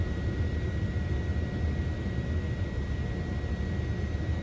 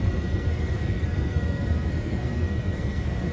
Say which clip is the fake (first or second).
second